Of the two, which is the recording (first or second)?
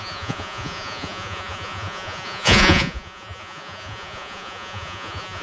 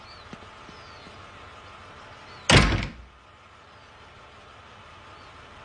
second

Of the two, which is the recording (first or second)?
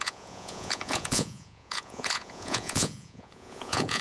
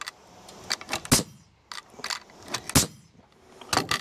second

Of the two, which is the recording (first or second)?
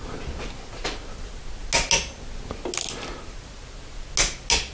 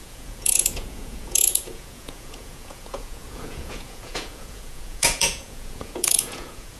first